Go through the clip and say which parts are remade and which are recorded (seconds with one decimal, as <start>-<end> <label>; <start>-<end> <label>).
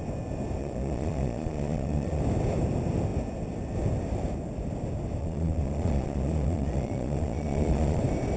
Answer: 0.0-0.6 recorded; 0.6-2.2 remade; 2.2-5.2 recorded; 5.2-8.0 remade; 8.0-8.4 recorded